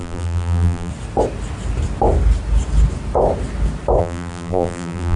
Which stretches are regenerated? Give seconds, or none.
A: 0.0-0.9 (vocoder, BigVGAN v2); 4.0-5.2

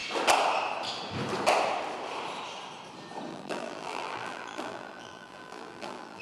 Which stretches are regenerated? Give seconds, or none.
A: 3.3-6.2 (vocoder, BigVGAN v2)

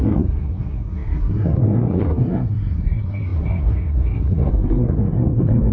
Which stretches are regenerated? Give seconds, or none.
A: 0.0-5.7 (codec, SNAC)

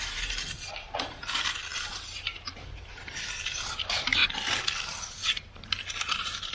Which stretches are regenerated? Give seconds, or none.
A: 0.0-4.2 (vocoder, BigVGAN v2); 4.8-6.5

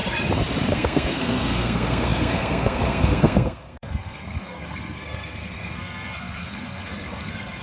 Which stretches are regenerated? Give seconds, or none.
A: 0.7-7.6 (codec, SNAC)

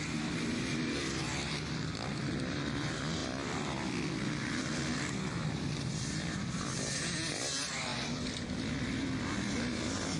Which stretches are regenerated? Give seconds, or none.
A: none

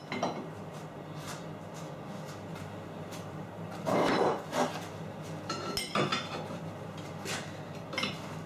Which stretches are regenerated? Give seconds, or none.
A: 2.5-4.9 (vocoder, BigVGAN v2); 6.1-7.1

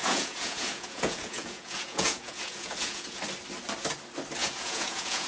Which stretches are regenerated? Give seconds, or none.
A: 0.0-3.2 (vocoder, Vocos); 4.4-5.3